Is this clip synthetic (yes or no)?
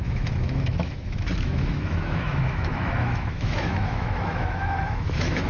yes